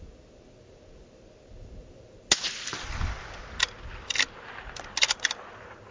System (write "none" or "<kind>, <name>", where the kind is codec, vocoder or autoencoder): none